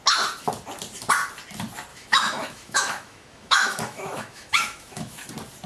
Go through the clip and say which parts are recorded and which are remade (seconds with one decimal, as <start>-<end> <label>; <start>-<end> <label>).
0.0-1.9 recorded; 1.9-5.3 remade; 5.3-5.7 recorded